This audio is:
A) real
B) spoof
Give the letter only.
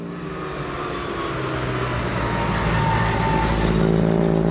A